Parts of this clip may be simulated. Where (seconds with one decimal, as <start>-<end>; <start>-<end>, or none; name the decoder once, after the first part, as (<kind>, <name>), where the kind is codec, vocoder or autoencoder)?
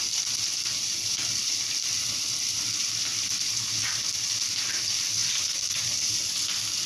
0.0-6.9 (vocoder, BigVGAN v2)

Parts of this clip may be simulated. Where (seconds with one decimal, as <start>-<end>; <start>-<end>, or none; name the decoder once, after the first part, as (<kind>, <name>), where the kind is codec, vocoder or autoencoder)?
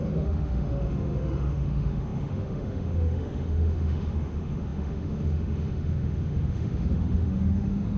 0.0-8.0 (autoencoder, DAC-VAE)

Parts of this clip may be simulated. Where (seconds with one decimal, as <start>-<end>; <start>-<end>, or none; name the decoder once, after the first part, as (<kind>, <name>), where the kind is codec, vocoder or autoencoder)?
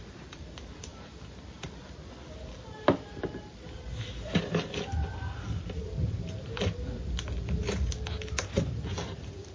none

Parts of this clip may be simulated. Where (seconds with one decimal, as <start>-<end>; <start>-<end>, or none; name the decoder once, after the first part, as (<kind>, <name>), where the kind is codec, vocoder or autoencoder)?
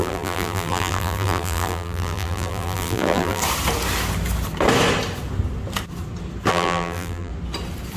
0.0-3.4 (vocoder, BigVGAN v2); 6.5-7.3